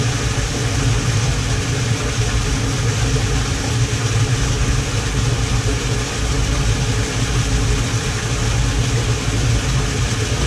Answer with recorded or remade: recorded